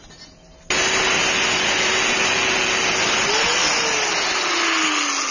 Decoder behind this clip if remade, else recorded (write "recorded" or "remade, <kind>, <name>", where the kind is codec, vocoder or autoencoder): recorded